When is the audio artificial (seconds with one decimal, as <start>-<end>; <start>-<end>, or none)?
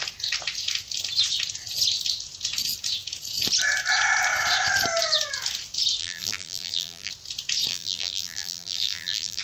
6.0-7.1; 7.7-9.4